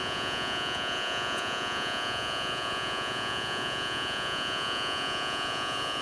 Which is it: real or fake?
fake